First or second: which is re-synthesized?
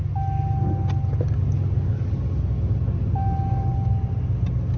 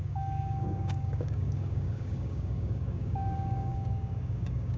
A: second